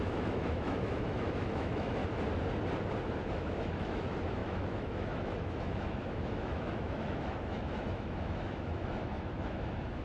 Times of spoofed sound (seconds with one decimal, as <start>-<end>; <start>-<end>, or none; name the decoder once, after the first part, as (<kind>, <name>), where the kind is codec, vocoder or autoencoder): 0.0-2.0 (autoencoder, DAC-VAE); 3.3-10.0